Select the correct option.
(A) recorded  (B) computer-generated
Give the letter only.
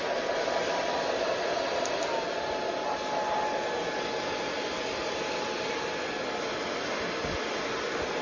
A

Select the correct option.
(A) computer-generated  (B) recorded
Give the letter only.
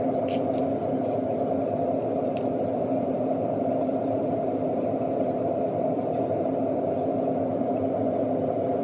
B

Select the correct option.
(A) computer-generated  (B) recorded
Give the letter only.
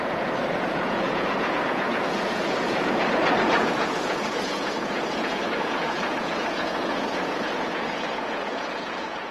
A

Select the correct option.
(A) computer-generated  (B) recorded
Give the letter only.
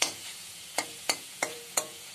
A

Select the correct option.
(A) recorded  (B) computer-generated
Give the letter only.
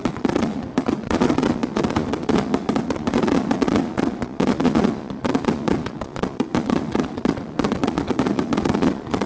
B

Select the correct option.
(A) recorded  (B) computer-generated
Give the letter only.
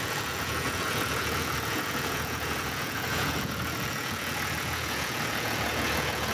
B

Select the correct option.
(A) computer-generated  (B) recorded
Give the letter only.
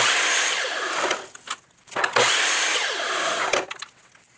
B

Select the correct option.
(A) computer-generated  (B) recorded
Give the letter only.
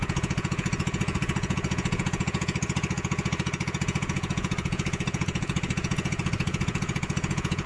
A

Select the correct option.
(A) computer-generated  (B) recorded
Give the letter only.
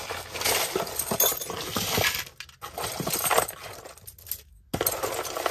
B